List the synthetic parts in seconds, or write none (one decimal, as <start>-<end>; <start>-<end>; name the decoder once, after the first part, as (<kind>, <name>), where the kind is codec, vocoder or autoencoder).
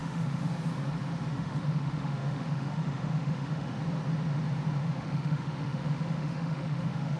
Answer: 0.0-0.5 (autoencoder, DAC-VAE); 1.3-3.8; 4.8-7.2